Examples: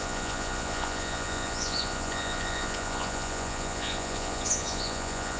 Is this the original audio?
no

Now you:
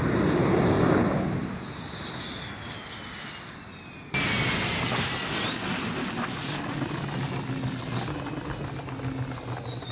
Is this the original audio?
yes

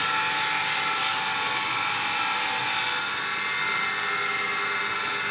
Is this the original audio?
yes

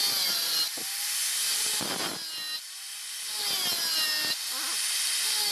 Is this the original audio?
yes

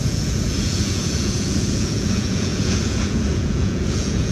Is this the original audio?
no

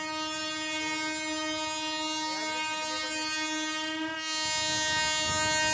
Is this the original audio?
yes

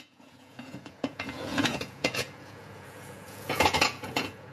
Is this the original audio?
no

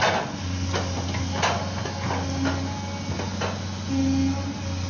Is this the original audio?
yes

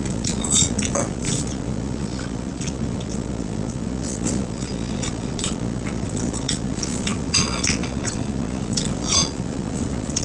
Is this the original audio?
no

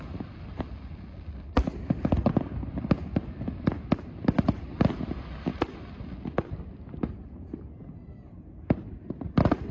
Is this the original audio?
yes